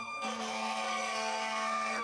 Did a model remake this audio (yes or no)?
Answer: yes